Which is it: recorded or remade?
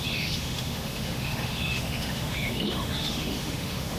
remade